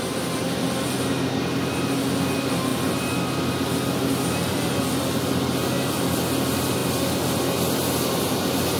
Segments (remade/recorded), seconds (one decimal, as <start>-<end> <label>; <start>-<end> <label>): 0.0-8.8 recorded